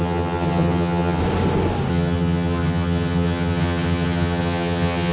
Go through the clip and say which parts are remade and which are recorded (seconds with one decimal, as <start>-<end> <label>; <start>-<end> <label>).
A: 0.0-1.2 remade; 1.2-1.9 recorded; 1.9-5.1 remade

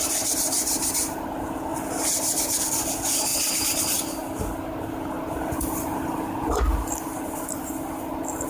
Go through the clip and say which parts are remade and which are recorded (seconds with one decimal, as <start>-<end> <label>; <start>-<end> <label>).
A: 0.0-8.5 recorded

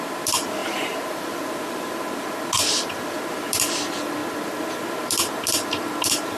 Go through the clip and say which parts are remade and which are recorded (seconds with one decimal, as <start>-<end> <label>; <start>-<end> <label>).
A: 0.0-0.6 recorded; 0.6-1.9 remade; 1.9-6.4 recorded

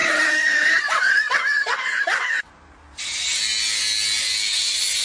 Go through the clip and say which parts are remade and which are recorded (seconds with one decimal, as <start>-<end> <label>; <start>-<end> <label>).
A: 0.0-2.5 remade; 2.5-5.0 recorded

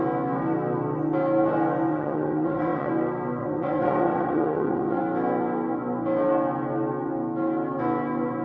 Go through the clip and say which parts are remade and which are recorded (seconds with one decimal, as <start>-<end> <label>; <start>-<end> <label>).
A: 0.0-1.9 recorded; 1.9-2.9 remade; 2.9-3.4 recorded; 3.4-5.0 remade; 5.0-8.4 recorded

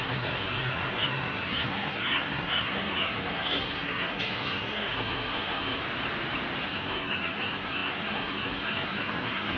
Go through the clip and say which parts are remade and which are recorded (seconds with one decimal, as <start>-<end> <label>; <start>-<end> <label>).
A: 0.0-5.8 remade; 5.8-6.6 recorded; 6.6-9.6 remade

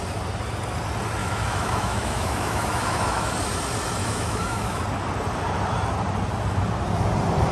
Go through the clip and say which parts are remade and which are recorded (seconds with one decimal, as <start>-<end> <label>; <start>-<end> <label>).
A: 0.0-1.2 recorded; 1.2-3.3 remade; 3.3-4.0 recorded; 4.0-4.8 remade; 4.8-7.5 recorded

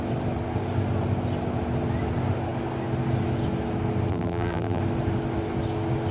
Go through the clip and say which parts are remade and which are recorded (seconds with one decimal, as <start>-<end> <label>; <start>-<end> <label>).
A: 0.0-4.1 recorded; 4.1-4.8 remade; 4.8-6.1 recorded